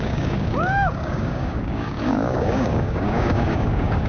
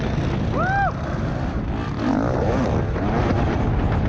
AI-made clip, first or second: first